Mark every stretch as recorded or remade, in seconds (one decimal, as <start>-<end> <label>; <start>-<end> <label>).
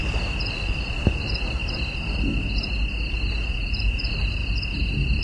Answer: 0.0-0.5 recorded; 0.5-1.6 remade; 1.6-3.5 recorded; 3.5-4.4 remade; 4.4-5.2 recorded